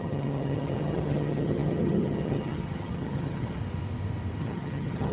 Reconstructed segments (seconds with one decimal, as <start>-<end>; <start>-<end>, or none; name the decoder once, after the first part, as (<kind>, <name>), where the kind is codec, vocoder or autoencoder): 0.0-3.6 (vocoder, HiFi-GAN); 4.4-5.1